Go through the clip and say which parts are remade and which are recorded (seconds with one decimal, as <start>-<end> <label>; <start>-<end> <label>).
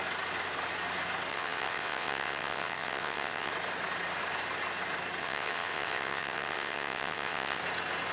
0.0-1.3 recorded; 1.3-3.5 remade; 3.5-5.2 recorded; 5.2-7.6 remade; 7.6-8.1 recorded